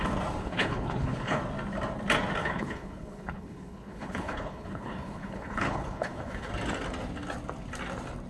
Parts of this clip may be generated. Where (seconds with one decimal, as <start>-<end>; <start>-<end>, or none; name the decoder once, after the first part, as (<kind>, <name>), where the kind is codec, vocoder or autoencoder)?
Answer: 0.4-1.4 (codec, HILCodec); 2.4-6.5